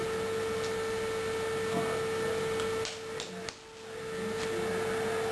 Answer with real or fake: real